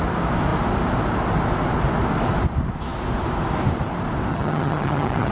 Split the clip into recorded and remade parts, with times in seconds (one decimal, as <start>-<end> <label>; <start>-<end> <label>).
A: 0.0-4.3 recorded; 4.3-5.3 remade